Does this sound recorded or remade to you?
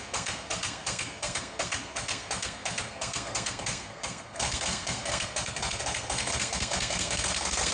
remade